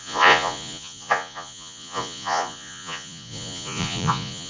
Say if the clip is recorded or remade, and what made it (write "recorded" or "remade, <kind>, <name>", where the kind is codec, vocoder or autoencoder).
remade, vocoder, Vocos